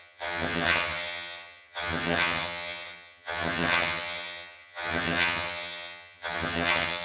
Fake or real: fake